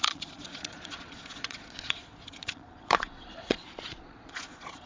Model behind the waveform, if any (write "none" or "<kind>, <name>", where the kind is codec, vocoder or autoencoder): vocoder, Vocos